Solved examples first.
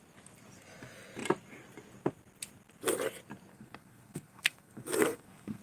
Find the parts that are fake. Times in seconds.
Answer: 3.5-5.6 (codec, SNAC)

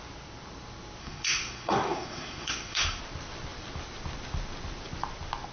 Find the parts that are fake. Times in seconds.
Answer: 1.0-3.0 (codec, SNAC)

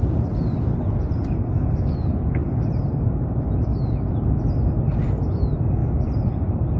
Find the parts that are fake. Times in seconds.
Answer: none

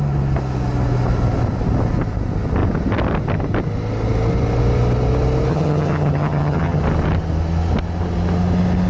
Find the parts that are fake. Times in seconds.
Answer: 5.5-6.8 (vocoder, HiFi-GAN)

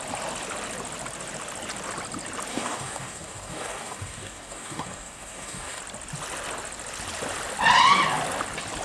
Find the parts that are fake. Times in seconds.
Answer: 2.5-5.8 (codec, DAC)

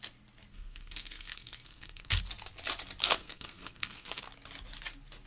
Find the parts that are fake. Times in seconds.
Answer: 0.5-2.2 (codec, SNAC); 3.0-4.2